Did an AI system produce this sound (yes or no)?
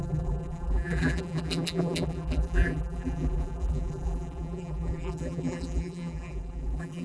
yes